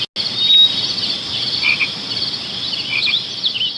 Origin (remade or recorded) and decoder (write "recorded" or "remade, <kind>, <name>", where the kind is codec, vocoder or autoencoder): recorded